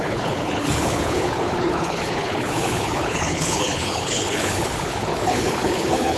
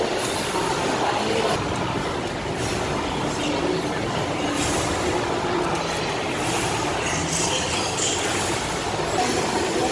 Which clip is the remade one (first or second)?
first